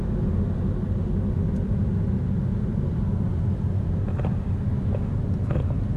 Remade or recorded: recorded